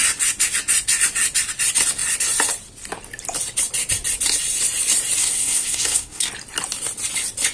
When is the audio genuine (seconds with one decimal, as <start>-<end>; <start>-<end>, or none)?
0.0-5.2; 6.3-7.5